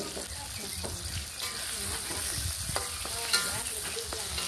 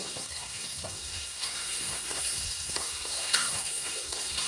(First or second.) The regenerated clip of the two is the second